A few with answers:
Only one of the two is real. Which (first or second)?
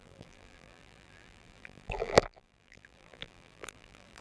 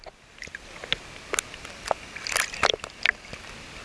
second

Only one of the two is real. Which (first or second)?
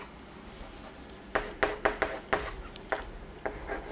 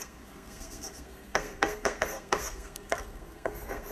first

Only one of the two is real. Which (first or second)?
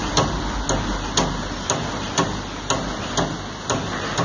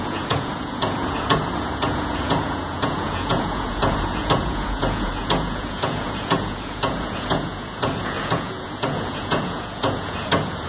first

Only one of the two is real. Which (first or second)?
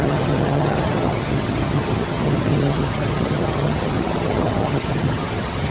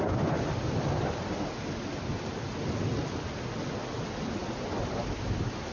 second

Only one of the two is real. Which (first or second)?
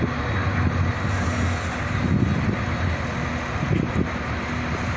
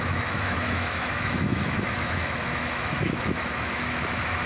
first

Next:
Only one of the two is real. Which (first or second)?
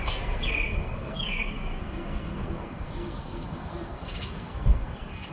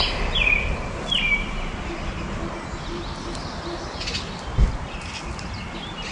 second